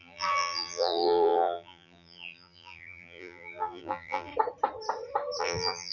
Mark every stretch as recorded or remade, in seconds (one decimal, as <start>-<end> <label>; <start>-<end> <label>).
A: 0.0-4.3 remade; 4.3-5.4 recorded; 5.4-5.9 remade